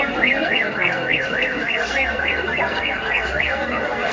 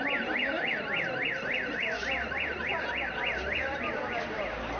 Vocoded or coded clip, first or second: first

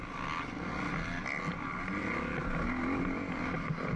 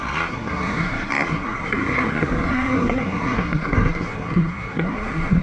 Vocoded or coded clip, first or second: second